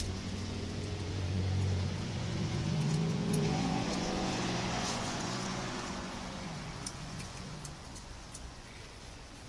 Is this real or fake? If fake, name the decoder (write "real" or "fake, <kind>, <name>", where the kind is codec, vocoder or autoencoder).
fake, vocoder, Vocos